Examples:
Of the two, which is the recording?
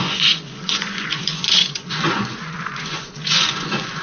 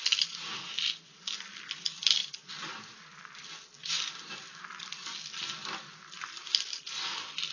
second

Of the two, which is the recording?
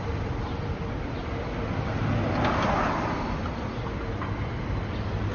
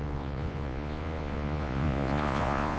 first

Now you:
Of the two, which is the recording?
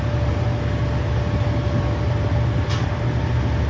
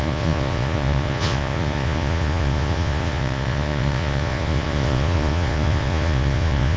first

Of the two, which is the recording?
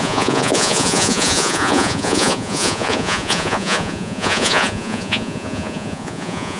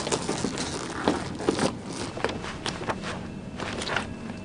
second